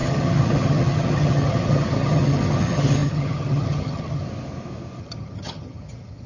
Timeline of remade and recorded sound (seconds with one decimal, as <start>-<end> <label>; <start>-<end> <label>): 0.0-4.2 remade; 4.2-5.0 recorded; 5.0-6.3 remade